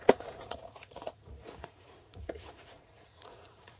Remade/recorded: remade